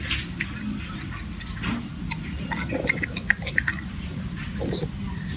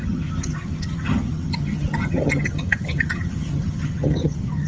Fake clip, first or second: second